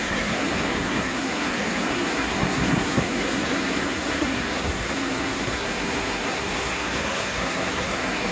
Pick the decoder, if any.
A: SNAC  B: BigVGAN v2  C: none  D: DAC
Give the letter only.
A